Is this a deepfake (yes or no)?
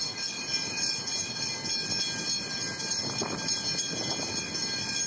no